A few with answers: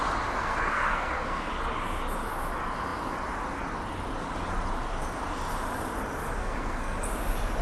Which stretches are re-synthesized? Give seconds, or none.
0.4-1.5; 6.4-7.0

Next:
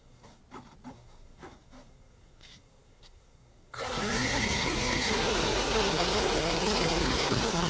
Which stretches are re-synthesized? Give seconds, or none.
0.0-0.4; 0.9-7.7